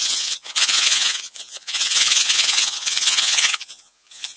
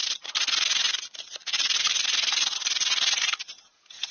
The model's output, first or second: first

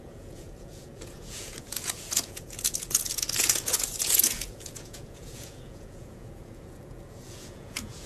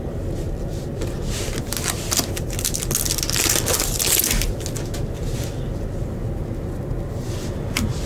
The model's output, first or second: first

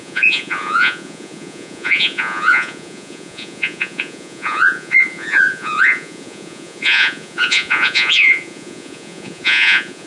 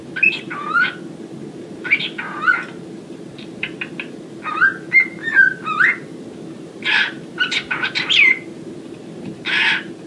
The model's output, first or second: first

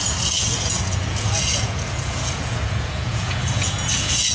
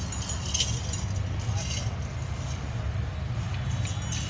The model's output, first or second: first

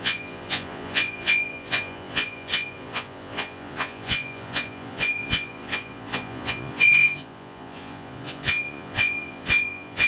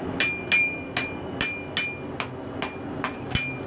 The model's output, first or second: first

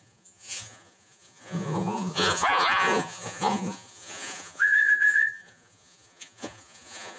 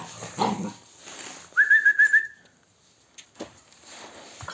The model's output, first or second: first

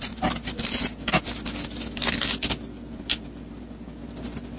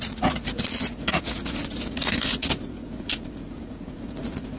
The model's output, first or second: second